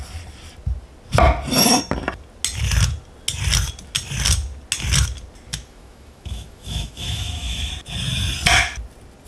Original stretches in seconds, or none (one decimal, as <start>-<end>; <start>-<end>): 0.0-5.5; 7.7-9.3